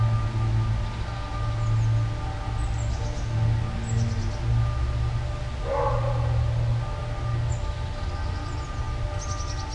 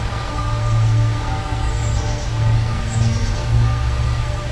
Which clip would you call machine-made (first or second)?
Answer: second